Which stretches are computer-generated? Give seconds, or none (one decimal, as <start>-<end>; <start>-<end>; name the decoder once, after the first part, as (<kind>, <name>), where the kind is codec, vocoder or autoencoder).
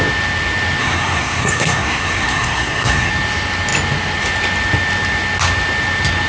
0.8-3.1 (codec, SNAC)